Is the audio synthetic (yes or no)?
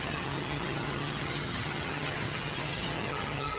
yes